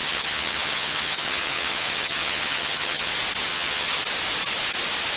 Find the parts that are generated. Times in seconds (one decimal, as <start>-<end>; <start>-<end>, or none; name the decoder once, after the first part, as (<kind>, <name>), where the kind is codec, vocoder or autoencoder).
0.0-3.1 (vocoder, HiFi-GAN); 3.5-4.0

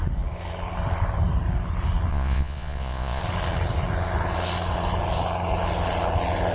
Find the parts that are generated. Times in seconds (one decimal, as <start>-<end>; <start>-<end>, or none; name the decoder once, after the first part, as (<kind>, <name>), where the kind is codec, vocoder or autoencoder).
2.1-3.2 (vocoder, Vocos)

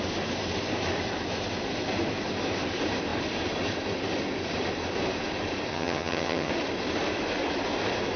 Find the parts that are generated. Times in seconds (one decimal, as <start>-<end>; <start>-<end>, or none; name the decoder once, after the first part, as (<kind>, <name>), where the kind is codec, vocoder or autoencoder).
5.7-6.5 (vocoder, HiFi-GAN)

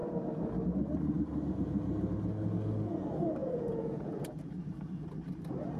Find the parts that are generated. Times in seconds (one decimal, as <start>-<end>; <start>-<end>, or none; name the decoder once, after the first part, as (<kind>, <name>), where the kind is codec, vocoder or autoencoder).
3.4-4.5 (vocoder, Vocos)

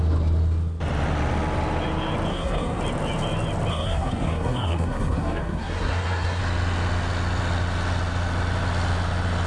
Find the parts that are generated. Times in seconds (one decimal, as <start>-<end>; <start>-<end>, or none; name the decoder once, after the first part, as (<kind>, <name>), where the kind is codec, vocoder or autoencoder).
2.3-2.8 (codec, SNAC); 3.7-6.4

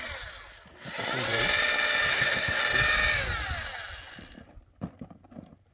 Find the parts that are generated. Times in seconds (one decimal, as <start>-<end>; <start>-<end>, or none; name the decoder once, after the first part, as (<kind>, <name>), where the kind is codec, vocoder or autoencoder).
2.1-2.6 (codec, SNAC)